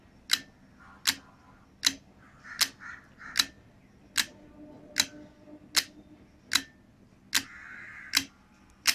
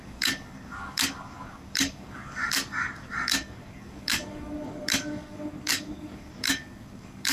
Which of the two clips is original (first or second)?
first